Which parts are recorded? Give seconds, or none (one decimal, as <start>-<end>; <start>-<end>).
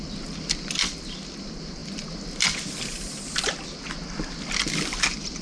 0.0-5.4